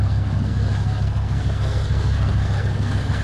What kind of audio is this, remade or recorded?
remade